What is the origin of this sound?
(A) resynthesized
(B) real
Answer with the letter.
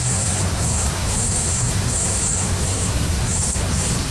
A